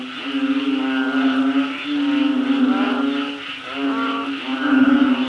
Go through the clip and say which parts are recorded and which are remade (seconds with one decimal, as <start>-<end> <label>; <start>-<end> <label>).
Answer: 0.0-4.5 recorded; 4.5-5.3 remade